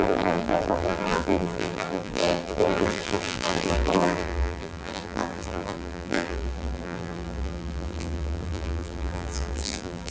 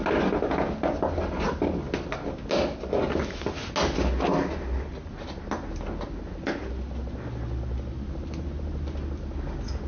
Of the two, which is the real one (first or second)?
second